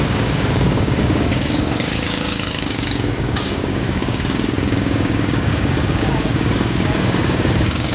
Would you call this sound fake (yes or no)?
yes